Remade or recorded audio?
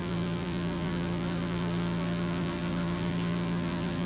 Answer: remade